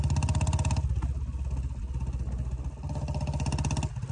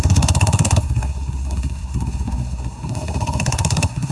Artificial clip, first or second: second